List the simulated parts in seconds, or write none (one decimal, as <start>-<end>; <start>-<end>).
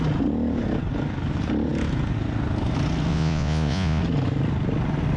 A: 3.1-4.0